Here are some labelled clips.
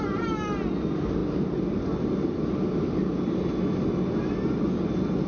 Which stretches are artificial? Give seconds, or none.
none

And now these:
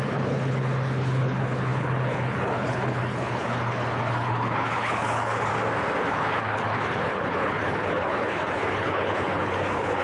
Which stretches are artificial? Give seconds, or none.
0.0-5.5; 6.1-10.0